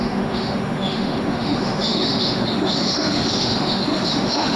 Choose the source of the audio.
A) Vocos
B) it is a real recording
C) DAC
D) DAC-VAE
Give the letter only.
D